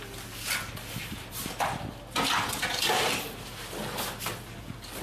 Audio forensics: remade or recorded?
recorded